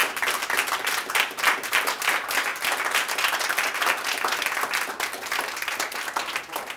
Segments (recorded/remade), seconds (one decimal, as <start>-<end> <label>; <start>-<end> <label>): 0.0-1.1 remade; 1.1-6.8 recorded